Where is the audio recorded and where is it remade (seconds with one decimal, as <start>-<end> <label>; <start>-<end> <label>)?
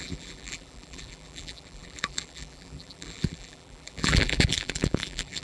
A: 0.0-5.4 remade